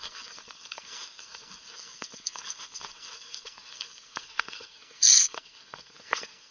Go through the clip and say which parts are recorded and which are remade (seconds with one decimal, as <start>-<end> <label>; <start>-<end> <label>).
0.0-6.5 remade